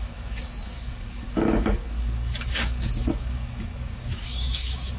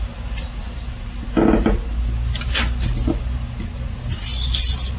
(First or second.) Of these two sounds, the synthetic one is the first